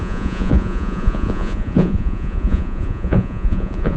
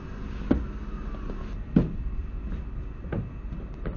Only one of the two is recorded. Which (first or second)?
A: second